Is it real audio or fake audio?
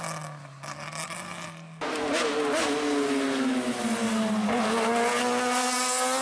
real